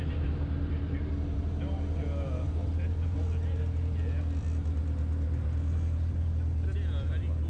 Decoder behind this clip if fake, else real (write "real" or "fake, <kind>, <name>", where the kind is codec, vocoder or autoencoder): real